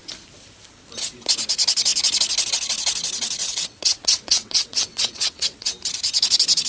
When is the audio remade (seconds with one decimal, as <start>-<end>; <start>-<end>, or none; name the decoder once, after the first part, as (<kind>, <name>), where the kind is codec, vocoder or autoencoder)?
3.4-5.7 (vocoder, WaveNeXt)